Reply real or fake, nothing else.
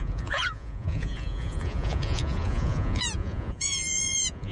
fake